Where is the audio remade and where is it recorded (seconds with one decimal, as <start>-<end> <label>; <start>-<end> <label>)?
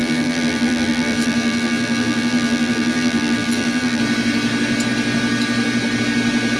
0.0-4.0 remade; 4.0-6.6 recorded